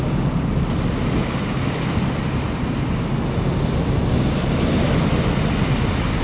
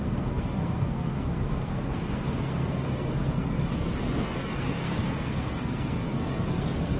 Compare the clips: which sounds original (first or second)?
first